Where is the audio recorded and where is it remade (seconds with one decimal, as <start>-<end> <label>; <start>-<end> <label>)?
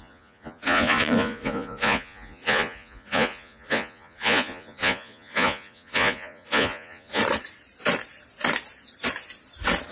0.0-7.2 remade; 7.2-9.9 recorded